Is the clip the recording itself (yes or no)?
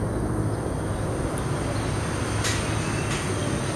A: yes